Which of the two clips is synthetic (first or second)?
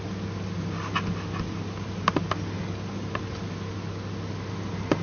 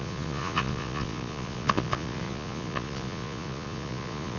second